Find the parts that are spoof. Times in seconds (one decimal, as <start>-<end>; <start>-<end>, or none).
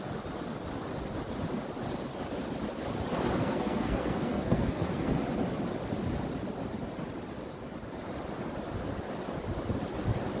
3.4-5.2